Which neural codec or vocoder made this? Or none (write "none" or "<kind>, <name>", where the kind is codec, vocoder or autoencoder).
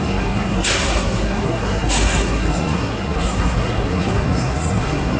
codec, SNAC